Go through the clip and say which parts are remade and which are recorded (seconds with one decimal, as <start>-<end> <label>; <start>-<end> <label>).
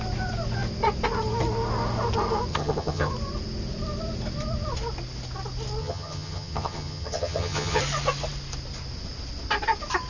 0.0-2.5 recorded; 2.5-3.1 remade; 3.1-5.8 recorded; 5.8-7.8 remade; 7.8-10.1 recorded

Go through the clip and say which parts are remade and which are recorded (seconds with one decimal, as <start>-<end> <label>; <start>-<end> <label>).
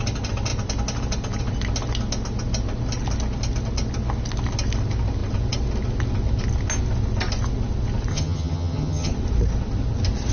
0.0-8.1 recorded; 8.1-9.1 remade; 9.1-10.3 recorded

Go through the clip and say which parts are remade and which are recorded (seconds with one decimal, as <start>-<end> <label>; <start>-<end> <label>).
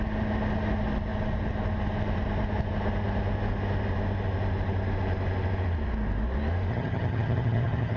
0.0-6.7 recorded; 6.7-8.0 remade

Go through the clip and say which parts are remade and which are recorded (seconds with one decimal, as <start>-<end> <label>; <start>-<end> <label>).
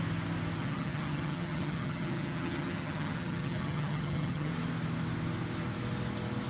0.0-0.6 recorded; 0.6-4.5 remade; 4.5-6.5 recorded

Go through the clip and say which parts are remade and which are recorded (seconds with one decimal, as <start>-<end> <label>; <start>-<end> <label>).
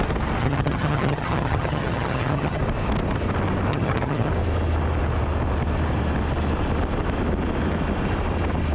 0.0-0.4 recorded; 0.4-2.6 remade; 2.6-3.7 recorded; 3.7-4.3 remade; 4.3-8.7 recorded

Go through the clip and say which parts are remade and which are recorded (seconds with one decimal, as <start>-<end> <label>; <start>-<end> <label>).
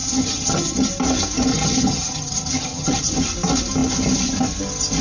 0.0-0.9 remade; 0.9-1.5 recorded; 1.5-3.1 remade; 3.1-5.0 recorded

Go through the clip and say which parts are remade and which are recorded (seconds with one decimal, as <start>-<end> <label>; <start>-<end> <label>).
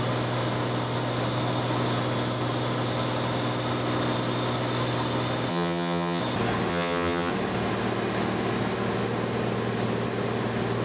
0.0-5.5 recorded; 5.5-6.2 remade; 6.2-6.7 recorded; 6.7-7.3 remade; 7.3-10.8 recorded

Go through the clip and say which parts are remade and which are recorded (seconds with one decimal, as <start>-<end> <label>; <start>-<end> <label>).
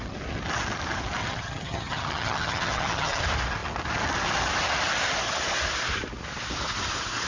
0.0-1.2 recorded; 1.2-3.2 remade; 3.2-7.3 recorded